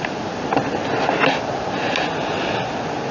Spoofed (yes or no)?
no